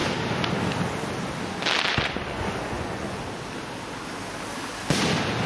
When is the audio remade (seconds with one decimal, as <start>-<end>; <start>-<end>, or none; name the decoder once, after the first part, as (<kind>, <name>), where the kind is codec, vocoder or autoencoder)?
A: 1.9-3.2 (vocoder, Vocos)